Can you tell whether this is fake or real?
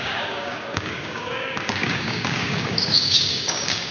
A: fake